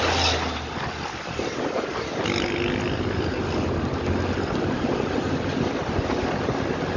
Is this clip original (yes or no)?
yes